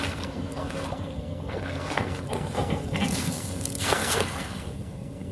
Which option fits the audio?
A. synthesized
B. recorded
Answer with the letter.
A